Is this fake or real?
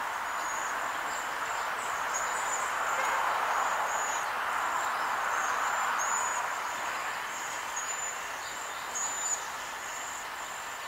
real